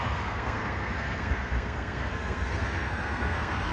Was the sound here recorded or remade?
remade